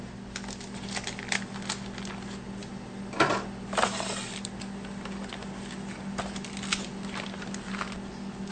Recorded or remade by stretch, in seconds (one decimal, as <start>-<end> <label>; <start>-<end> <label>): 0.0-8.5 recorded

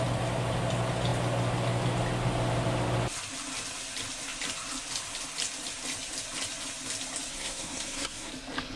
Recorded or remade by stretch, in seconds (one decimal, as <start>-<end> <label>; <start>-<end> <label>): 0.0-7.3 recorded; 7.3-8.3 remade; 8.3-8.8 recorded

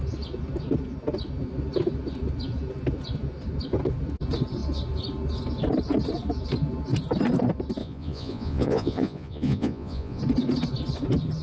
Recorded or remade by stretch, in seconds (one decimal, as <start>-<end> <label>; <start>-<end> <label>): 0.0-7.8 recorded; 7.8-10.2 remade; 10.2-11.4 recorded